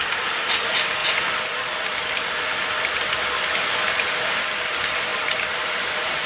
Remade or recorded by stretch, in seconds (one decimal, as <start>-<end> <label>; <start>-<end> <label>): 0.0-1.0 recorded; 1.0-2.1 remade; 2.1-5.1 recorded; 5.1-6.3 remade